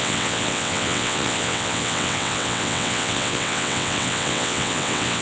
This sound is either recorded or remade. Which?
remade